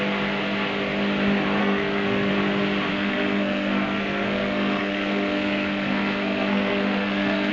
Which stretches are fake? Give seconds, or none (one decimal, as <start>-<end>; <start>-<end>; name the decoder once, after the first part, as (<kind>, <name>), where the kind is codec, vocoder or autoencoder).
1.6-2.3 (codec, SNAC); 2.9-7.5